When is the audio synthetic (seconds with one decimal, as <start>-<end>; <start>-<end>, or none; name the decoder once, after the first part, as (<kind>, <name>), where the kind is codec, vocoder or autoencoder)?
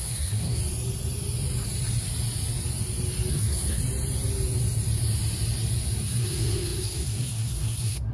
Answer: 0.0-0.6 (codec, SNAC); 3.3-3.8; 6.0-8.1